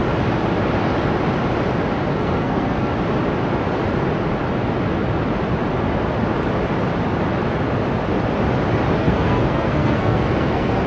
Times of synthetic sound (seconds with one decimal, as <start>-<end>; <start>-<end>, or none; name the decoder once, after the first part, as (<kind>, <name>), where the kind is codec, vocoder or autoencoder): 2.1-2.9 (codec, SNAC); 9.0-10.9